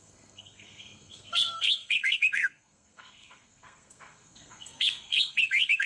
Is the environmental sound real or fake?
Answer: fake